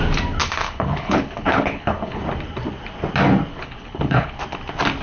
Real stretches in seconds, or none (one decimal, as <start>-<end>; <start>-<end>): 0.0-0.4; 2.2-3.5; 4.4-5.0